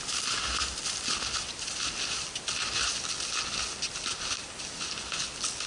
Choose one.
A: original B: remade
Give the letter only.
A